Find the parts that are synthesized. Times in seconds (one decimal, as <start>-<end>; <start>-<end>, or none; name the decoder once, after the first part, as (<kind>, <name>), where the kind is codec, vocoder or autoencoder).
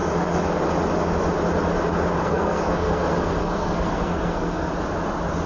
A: 2.2-4.7 (codec, SNAC)